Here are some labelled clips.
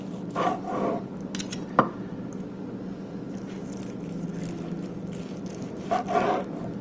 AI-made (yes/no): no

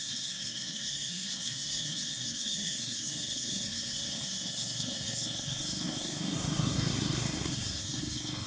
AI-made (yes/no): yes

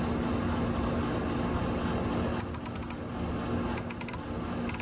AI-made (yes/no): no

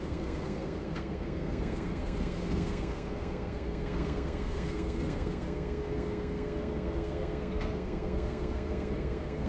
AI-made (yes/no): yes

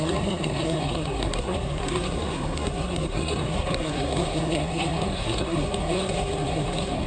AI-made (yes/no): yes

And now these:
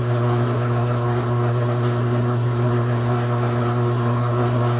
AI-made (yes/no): yes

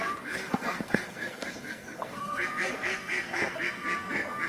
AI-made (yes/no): yes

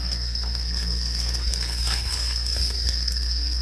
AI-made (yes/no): yes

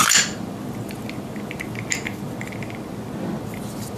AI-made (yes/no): no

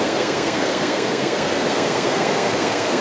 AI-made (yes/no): yes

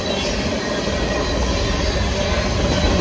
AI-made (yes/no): no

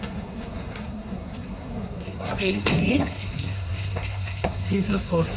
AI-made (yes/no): yes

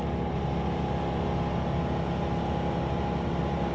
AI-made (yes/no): no